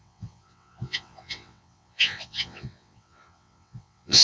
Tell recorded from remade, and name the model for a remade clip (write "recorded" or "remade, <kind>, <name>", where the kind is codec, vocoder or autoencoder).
remade, vocoder, WaveNeXt